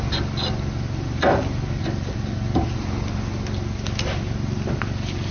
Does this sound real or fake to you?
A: real